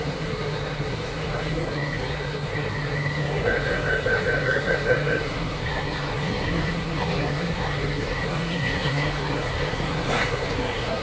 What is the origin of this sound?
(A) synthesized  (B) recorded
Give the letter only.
A